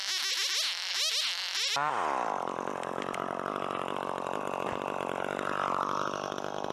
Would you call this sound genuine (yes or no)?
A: yes